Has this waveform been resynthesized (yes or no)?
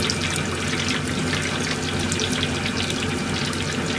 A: no